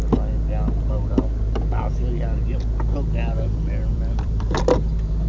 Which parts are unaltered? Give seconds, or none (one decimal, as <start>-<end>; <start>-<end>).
0.0-3.9; 4.6-5.3